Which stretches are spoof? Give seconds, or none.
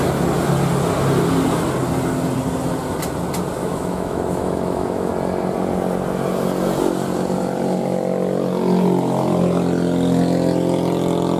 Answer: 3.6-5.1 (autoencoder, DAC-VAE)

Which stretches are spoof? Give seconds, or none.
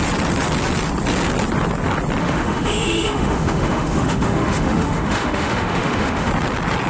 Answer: 2.2-6.3 (autoencoder, DAC-VAE)